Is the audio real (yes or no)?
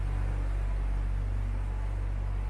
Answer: yes